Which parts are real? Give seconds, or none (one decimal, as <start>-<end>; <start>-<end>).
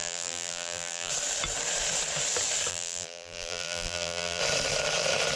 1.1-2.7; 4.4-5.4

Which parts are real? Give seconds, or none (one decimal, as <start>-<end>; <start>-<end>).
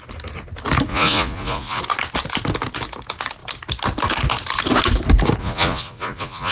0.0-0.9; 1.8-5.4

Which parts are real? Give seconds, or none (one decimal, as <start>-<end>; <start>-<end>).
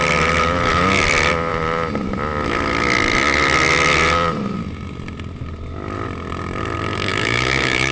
0.0-7.1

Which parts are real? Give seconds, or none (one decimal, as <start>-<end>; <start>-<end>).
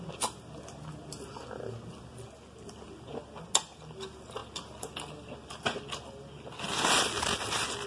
0.0-7.9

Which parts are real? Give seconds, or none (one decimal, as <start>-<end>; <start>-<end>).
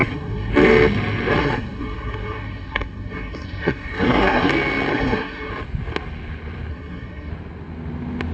0.5-1.4; 4.5-4.9; 5.5-6.7; 7.3-8.3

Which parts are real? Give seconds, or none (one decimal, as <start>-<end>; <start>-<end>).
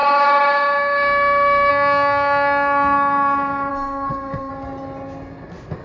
1.7-3.7; 4.5-5.8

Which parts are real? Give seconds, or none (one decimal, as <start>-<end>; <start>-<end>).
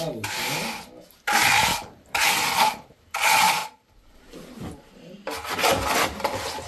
0.0-6.7